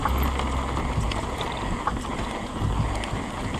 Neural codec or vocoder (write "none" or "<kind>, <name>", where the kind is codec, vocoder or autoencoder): none